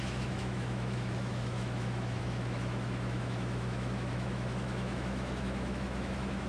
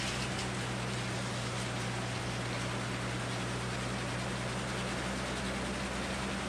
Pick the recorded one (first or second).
second